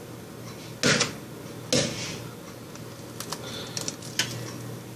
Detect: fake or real real